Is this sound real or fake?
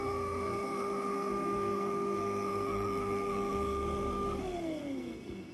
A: fake